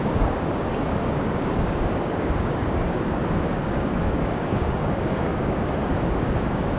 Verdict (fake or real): fake